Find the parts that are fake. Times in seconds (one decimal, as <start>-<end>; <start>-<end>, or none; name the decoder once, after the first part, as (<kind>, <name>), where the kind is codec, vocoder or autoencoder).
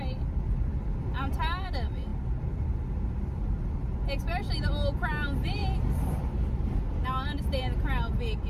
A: none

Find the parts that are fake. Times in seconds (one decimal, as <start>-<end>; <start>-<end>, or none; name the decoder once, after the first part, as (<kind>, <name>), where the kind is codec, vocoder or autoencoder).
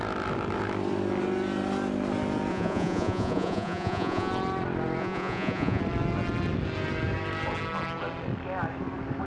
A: 2.5-4.3 (vocoder, Vocos); 5.0-5.8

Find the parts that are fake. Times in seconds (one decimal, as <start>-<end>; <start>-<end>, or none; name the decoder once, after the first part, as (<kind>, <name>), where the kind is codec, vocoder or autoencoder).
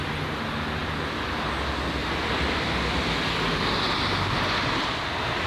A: 2.0-3.0 (vocoder, BigVGAN v2)